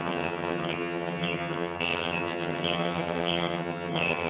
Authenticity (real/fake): fake